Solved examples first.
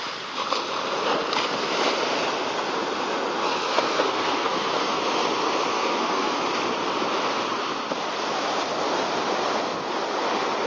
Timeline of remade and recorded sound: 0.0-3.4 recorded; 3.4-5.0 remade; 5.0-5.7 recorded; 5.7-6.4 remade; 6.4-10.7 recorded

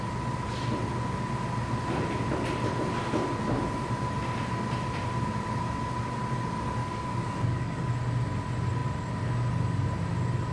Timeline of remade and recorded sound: 0.0-6.8 recorded; 6.8-7.9 remade; 7.9-10.5 recorded